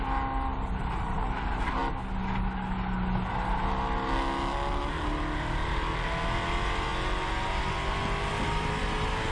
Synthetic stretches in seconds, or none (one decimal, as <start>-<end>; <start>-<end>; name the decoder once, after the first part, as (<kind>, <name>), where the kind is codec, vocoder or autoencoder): none